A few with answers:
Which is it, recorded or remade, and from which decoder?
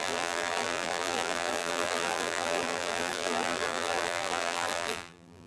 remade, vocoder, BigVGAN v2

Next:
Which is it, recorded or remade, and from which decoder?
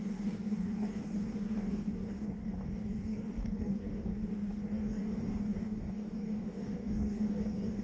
remade, codec, DAC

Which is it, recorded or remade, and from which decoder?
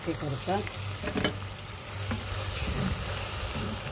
recorded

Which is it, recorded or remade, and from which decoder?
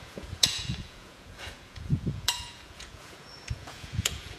remade, vocoder, Vocos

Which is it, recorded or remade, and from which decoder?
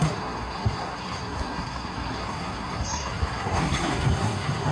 remade, codec, SNAC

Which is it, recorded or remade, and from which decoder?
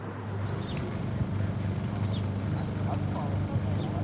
recorded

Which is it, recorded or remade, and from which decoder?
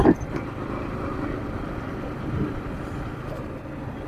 remade, vocoder, BigVGAN v2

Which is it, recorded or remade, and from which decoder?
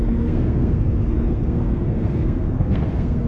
remade, codec, SNAC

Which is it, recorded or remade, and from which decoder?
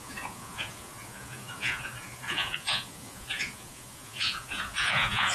remade, vocoder, Vocos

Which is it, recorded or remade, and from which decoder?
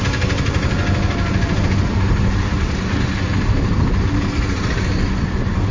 recorded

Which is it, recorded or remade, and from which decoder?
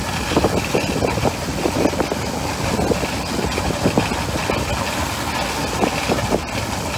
recorded